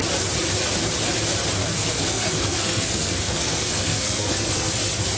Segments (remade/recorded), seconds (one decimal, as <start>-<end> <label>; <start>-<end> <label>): 0.0-1.6 recorded; 1.6-4.7 remade; 4.7-5.2 recorded